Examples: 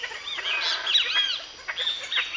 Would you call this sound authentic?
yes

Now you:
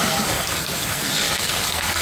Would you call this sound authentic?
no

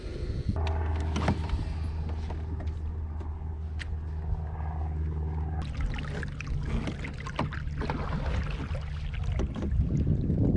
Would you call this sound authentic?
yes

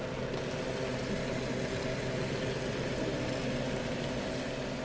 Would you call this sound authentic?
yes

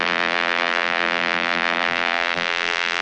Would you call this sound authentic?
no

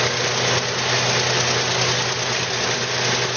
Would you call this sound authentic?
yes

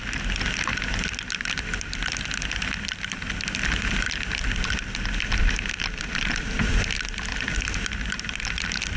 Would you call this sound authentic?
yes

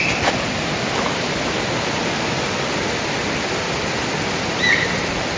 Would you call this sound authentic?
yes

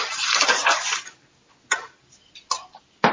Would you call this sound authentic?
yes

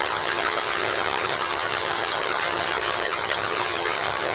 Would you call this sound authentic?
no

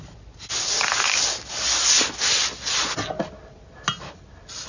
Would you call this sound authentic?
yes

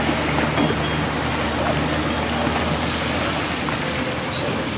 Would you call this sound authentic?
yes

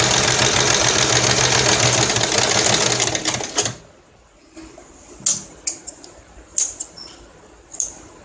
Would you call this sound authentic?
yes